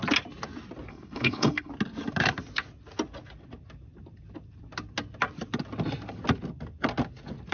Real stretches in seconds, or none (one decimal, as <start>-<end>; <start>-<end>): 0.0-0.9; 1.7-7.5